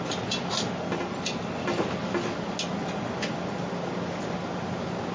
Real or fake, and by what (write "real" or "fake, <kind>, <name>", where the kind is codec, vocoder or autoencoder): real